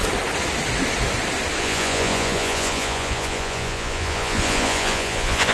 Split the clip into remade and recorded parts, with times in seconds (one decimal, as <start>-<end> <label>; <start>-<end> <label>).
0.0-1.6 recorded; 1.6-5.5 remade